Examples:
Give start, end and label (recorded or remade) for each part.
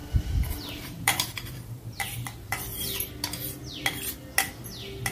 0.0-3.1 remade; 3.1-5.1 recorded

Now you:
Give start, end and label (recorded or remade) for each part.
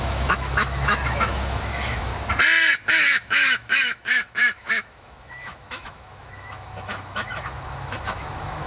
0.0-2.1 remade; 2.1-2.9 recorded; 2.9-8.7 remade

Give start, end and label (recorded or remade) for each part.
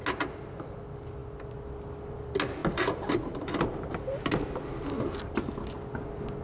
0.0-2.6 recorded; 2.6-3.9 remade; 3.9-6.4 recorded